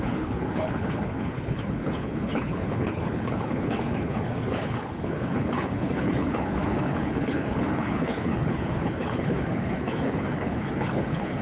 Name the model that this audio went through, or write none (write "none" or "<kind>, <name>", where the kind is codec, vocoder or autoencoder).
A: codec, HILCodec